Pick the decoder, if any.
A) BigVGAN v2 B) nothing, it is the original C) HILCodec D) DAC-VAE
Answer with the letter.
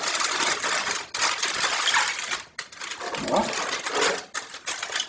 B